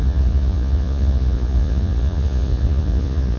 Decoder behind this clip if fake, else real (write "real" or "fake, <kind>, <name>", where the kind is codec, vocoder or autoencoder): fake, vocoder, Vocos